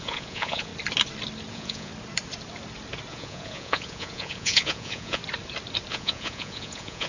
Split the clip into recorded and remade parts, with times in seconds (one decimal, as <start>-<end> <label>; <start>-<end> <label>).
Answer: 0.0-0.7 remade; 0.7-1.5 recorded; 1.5-1.9 remade; 1.9-3.1 recorded; 3.1-5.2 remade; 5.2-5.9 recorded; 5.9-7.1 remade